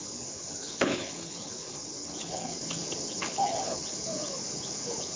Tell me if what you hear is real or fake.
fake